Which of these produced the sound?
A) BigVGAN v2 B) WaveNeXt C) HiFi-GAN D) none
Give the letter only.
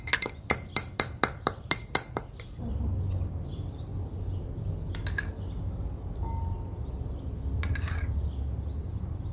D